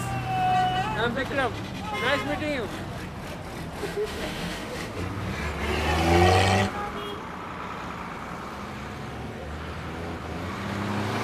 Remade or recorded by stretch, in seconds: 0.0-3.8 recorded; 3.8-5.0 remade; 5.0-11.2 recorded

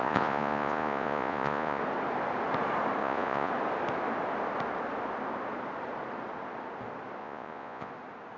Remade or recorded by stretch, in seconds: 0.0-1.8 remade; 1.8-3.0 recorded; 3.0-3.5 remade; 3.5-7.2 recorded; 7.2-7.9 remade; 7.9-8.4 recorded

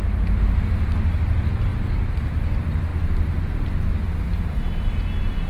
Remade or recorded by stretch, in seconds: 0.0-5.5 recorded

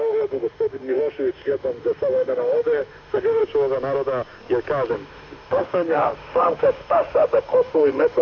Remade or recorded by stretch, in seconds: 0.0-3.4 remade; 3.4-4.9 recorded; 4.9-8.2 remade

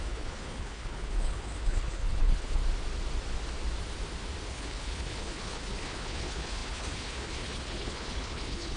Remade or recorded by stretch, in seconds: 0.0-2.6 remade; 2.6-4.5 recorded; 4.5-8.8 remade

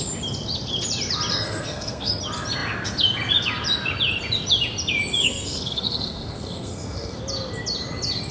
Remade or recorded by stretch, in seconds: 0.0-1.3 recorded; 1.3-2.1 remade; 2.1-5.2 recorded; 5.2-7.2 remade; 7.2-8.3 recorded

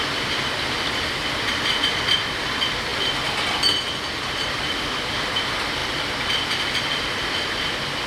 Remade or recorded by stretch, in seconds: 0.0-8.1 recorded

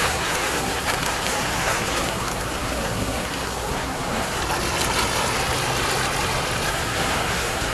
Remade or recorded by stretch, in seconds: 0.0-4.4 remade; 4.4-6.7 recorded; 6.7-7.7 remade